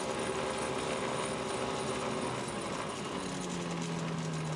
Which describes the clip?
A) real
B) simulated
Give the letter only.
A